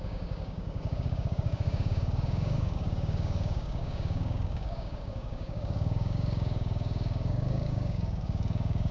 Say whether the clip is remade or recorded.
remade